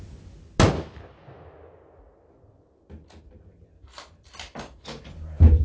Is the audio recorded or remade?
recorded